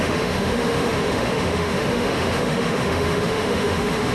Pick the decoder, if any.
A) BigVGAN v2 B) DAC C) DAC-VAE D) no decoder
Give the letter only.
C